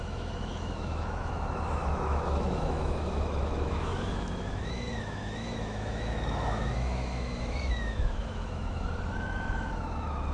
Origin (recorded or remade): remade